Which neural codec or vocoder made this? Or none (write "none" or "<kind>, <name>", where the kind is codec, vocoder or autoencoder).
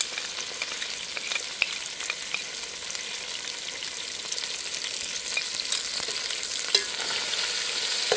none